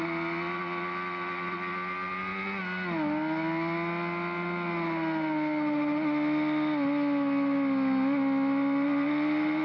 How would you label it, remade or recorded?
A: recorded